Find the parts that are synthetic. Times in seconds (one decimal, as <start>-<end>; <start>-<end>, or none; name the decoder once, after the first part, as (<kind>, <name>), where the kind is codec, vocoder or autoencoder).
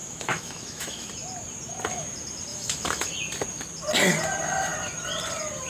0.0-1.1 (autoencoder, DAC-VAE); 2.5-3.1